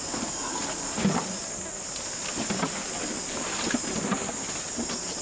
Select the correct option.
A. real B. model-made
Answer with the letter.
A